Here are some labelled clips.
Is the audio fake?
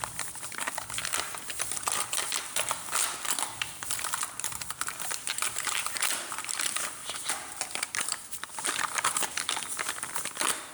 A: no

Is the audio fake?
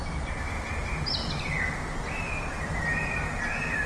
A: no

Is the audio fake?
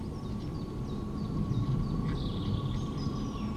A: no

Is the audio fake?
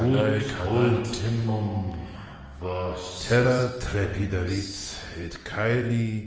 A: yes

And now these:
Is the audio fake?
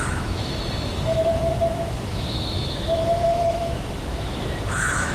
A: yes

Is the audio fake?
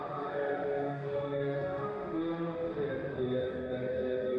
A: yes